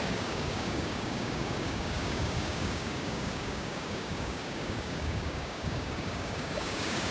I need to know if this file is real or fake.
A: fake